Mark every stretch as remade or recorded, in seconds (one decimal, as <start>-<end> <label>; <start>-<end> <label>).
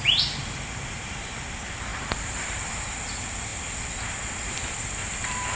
0.0-5.6 remade